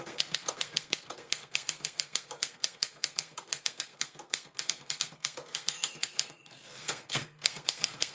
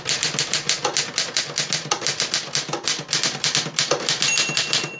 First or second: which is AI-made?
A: first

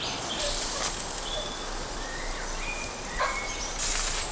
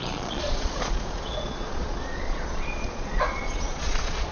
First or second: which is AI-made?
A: second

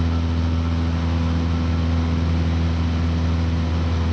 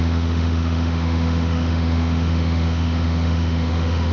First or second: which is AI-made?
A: second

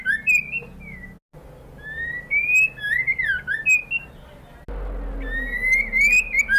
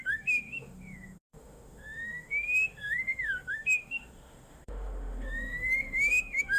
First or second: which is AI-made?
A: second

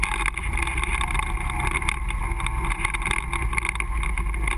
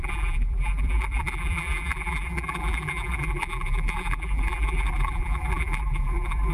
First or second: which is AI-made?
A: second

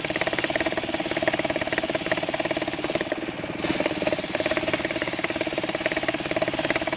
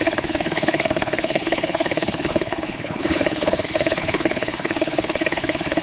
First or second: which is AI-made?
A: second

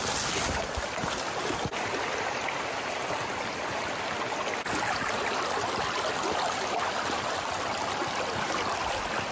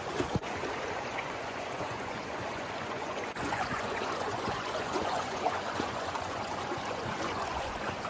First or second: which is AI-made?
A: second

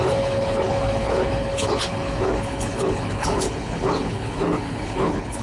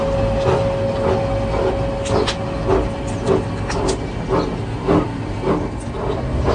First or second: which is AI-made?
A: first